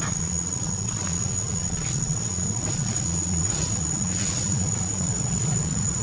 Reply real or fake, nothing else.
fake